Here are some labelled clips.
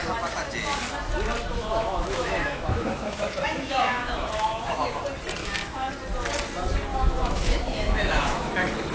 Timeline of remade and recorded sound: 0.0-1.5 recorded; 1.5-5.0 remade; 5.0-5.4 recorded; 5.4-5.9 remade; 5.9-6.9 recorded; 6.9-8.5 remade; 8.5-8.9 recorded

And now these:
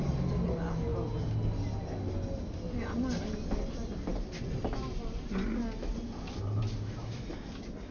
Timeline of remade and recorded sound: 0.0-7.9 recorded

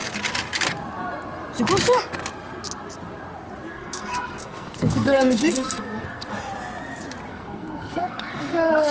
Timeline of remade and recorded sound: 0.0-3.7 recorded; 3.7-6.3 remade; 6.3-7.3 recorded; 7.3-8.9 remade

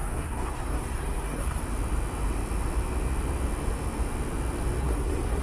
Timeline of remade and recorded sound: 0.0-1.6 remade; 1.6-4.8 recorded; 4.8-5.4 remade

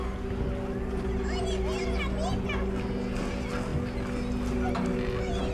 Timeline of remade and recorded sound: 0.0-5.5 recorded

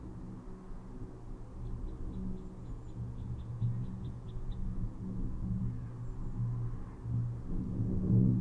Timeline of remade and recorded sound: 0.0-2.6 recorded; 2.6-5.9 remade; 5.9-8.4 recorded

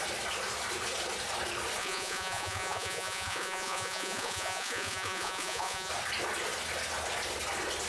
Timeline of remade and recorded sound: 0.0-1.8 recorded; 1.8-5.9 remade; 5.9-7.9 recorded